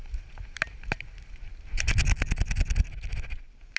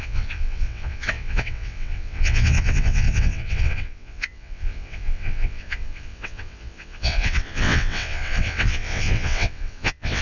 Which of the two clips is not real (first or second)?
second